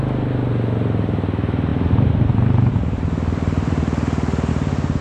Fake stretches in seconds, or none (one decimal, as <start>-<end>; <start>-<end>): none